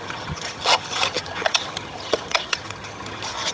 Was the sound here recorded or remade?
remade